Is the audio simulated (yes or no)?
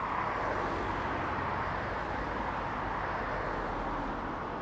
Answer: no